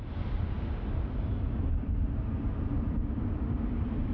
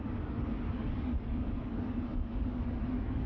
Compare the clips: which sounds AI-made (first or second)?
second